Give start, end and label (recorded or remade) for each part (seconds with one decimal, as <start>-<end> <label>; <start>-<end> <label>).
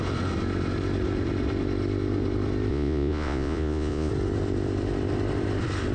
0.0-2.7 recorded; 2.7-4.1 remade; 4.1-5.9 recorded